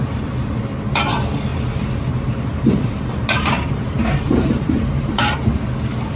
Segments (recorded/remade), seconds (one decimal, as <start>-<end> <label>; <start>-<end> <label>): 0.0-1.5 recorded; 1.5-5.2 remade; 5.2-6.2 recorded